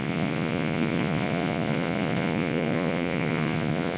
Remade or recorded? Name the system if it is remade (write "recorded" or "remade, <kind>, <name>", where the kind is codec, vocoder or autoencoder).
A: remade, vocoder, Vocos